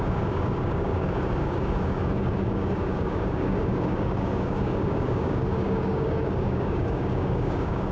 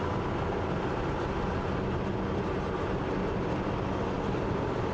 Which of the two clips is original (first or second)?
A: second